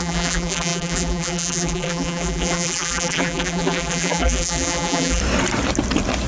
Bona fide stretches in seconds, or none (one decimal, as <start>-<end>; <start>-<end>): 5.2-6.3